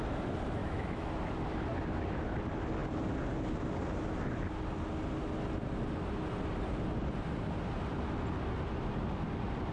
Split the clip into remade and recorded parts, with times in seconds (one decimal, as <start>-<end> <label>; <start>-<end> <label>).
0.0-0.6 recorded; 0.6-1.1 remade; 1.1-9.7 recorded

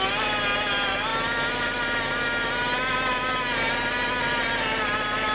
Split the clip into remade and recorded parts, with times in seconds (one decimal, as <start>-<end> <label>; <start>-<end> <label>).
0.0-5.3 recorded

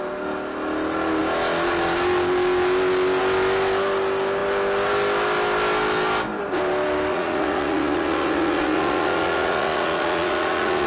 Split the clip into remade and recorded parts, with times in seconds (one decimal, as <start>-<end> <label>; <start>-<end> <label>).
0.0-7.1 recorded; 7.1-10.9 remade